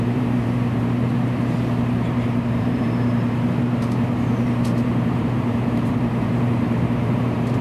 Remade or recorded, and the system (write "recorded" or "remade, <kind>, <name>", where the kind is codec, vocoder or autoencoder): remade, vocoder, BigVGAN v2